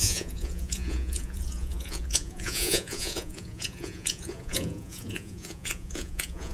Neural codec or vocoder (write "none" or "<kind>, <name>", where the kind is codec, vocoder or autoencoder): vocoder, Vocos